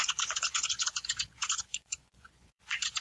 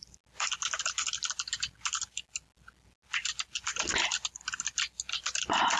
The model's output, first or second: first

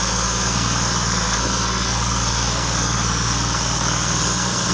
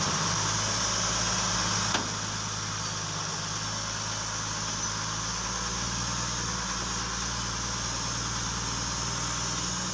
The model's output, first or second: first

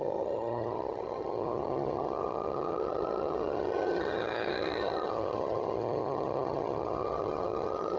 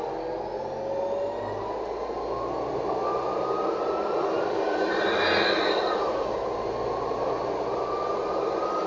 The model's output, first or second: first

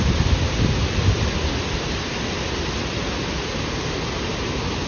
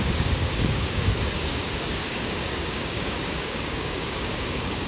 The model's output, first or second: second